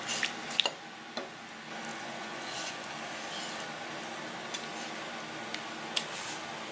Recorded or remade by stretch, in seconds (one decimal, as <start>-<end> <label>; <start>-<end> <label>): 0.0-1.9 recorded; 1.9-2.9 remade; 2.9-6.7 recorded